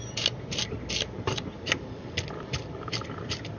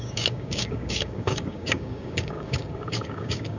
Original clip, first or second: first